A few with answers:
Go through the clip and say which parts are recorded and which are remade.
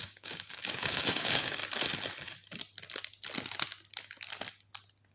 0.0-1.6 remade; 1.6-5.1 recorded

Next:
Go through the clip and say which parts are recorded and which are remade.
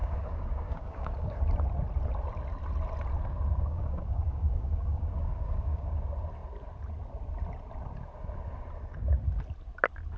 0.0-1.4 remade; 1.4-3.7 recorded; 3.7-6.0 remade; 6.0-10.2 recorded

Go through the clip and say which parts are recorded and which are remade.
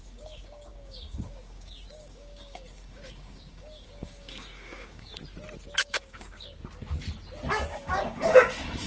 0.0-5.1 remade; 5.1-5.8 recorded; 5.8-6.6 remade; 6.6-7.5 recorded; 7.5-8.9 remade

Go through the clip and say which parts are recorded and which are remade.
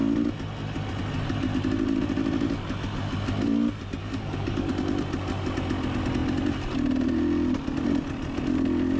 0.0-4.0 recorded; 4.0-4.7 remade; 4.7-9.0 recorded